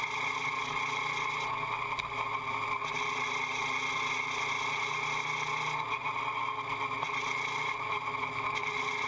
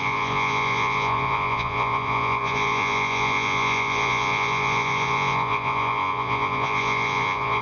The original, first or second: first